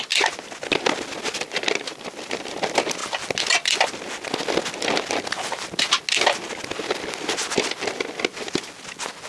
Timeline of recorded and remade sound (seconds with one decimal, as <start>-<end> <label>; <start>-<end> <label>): 0.0-9.3 recorded